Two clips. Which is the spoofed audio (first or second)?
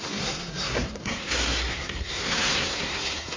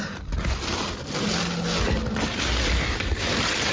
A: first